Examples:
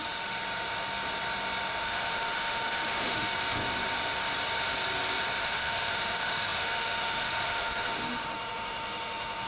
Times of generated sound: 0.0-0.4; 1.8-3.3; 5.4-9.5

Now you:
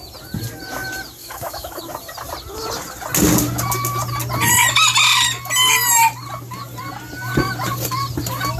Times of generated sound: 1.2-1.8

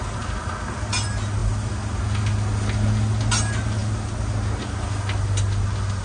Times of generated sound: none

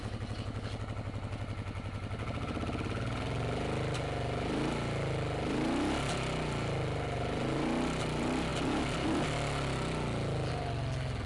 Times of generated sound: none

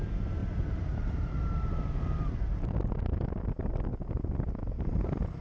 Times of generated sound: none

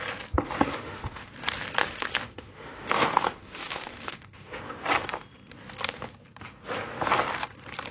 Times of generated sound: 0.7-1.3; 1.8-4.6